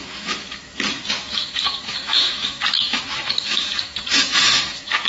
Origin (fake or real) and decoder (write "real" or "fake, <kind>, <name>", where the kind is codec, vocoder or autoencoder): fake, autoencoder, DAC-VAE